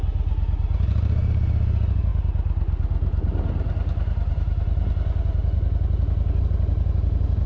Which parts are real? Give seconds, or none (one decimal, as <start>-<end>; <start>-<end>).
0.0-7.5